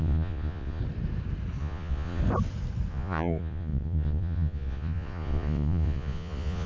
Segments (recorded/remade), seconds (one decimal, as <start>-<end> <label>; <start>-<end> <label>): 0.0-0.8 remade; 0.8-1.6 recorded; 1.6-2.2 remade; 2.2-2.9 recorded; 2.9-6.7 remade